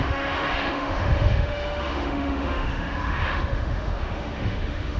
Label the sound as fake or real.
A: fake